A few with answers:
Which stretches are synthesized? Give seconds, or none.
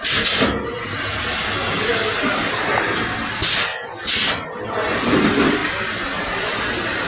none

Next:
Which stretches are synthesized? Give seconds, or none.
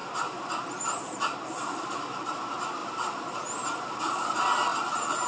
0.0-2.4 (vocoder, BigVGAN v2); 2.8-3.5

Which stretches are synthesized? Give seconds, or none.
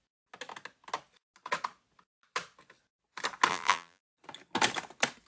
3.5-4.0 (vocoder, BigVGAN v2)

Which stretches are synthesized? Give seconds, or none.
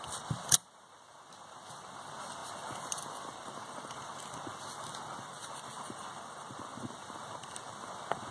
none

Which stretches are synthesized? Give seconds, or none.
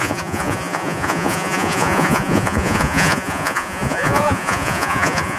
0.0-5.4 (vocoder, Vocos)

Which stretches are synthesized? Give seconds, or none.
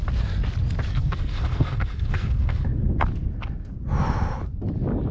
0.9-2.7 (codec, SNAC)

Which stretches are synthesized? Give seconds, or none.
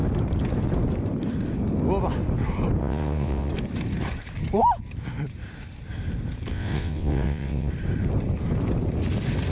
2.8-3.5 (vocoder, WaveNeXt); 6.5-7.7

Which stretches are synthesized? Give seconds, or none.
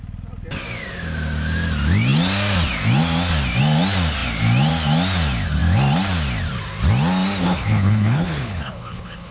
7.4-9.3 (codec, HILCodec)